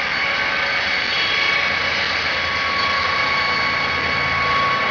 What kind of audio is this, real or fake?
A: real